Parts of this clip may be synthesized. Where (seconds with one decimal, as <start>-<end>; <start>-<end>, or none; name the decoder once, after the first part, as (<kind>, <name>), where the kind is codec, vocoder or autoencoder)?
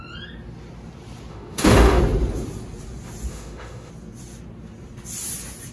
1.3-2.0 (autoencoder, DAC-VAE); 3.3-3.9